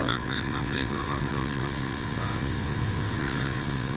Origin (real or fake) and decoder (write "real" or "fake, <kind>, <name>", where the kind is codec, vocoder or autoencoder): fake, vocoder, WaveNeXt